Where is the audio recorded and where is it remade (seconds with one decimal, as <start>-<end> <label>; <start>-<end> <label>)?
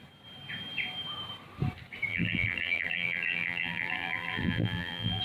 0.0-2.1 recorded; 2.1-5.2 remade